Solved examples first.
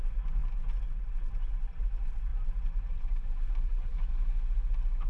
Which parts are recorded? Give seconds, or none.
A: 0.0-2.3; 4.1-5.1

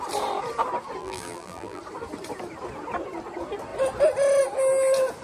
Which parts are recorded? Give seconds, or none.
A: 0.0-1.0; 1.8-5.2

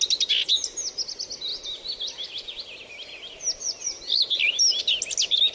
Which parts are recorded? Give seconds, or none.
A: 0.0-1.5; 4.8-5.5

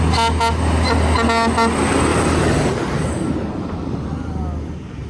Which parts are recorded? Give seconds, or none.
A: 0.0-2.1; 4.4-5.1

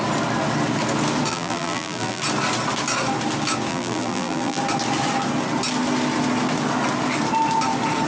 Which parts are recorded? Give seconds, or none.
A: 0.0-1.3; 2.2-3.7; 4.6-8.1